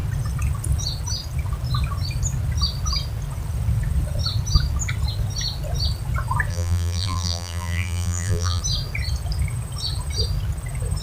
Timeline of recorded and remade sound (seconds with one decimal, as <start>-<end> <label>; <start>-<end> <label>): 0.0-6.5 recorded; 6.5-8.6 remade; 8.6-11.0 recorded